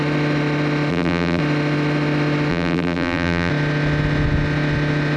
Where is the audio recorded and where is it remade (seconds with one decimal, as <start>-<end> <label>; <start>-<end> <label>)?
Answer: 0.0-0.9 recorded; 0.9-1.4 remade; 1.4-2.5 recorded; 2.5-3.5 remade; 3.5-5.2 recorded